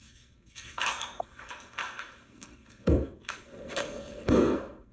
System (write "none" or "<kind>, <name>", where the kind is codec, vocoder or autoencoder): codec, SNAC